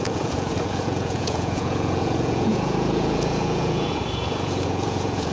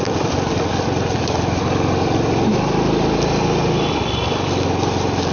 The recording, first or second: second